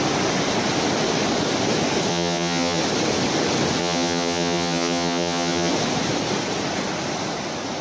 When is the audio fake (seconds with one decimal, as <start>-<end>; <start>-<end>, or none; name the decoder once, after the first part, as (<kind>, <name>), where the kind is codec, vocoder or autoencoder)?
2.1-2.8 (vocoder, HiFi-GAN); 3.8-5.7